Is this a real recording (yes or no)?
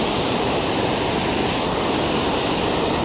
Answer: yes